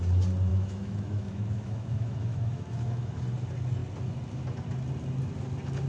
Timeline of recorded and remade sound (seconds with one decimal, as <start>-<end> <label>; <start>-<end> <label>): 0.0-0.5 recorded; 0.5-3.2 remade; 3.2-5.9 recorded

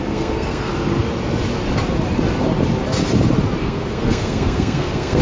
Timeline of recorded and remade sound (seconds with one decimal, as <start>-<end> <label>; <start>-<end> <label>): 0.0-0.7 remade; 0.7-3.6 recorded; 3.6-5.2 remade

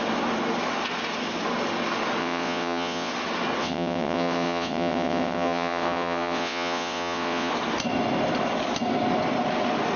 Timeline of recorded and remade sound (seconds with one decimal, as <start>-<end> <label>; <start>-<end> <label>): 0.0-2.2 recorded; 2.2-3.1 remade; 3.1-3.6 recorded; 3.6-7.5 remade; 7.5-10.0 recorded

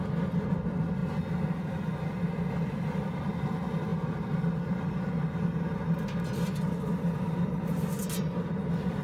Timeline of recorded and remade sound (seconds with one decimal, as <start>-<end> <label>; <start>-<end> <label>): 0.0-9.0 recorded

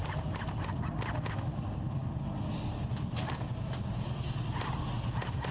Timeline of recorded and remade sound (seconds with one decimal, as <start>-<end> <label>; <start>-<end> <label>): 0.0-5.5 recorded

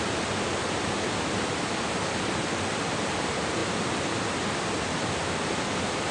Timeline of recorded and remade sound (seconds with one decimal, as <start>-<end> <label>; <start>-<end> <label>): 0.0-6.1 recorded